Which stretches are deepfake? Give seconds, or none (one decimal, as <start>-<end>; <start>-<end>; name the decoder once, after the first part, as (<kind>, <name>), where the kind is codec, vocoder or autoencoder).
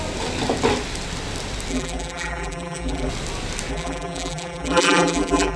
1.7-3.1 (vocoder, BigVGAN v2); 3.7-5.6